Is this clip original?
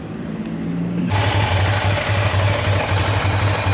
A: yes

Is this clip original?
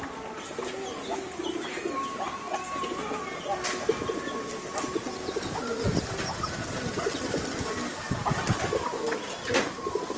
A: yes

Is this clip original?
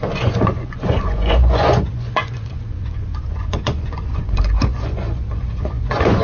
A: no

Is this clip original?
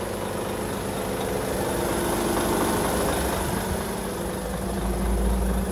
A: yes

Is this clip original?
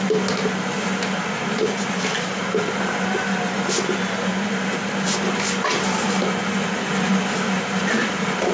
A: yes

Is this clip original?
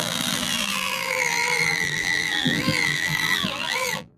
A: no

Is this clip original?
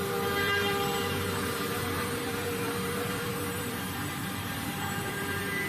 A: no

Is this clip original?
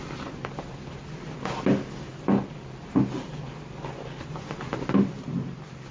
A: yes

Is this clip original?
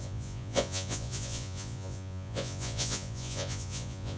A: no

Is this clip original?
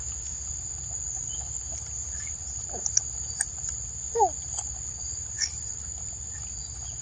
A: yes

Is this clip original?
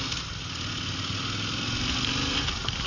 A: yes